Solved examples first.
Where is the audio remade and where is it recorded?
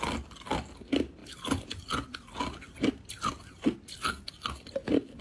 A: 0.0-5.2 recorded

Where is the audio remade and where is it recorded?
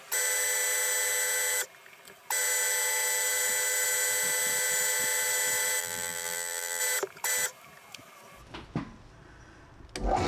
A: 0.0-5.8 recorded; 5.8-6.8 remade; 6.8-10.3 recorded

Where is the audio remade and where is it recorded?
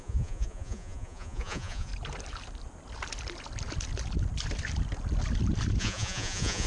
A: 0.0-1.9 remade; 1.9-5.8 recorded; 5.8-6.7 remade